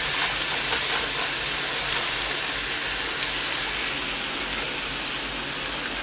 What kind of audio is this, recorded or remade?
recorded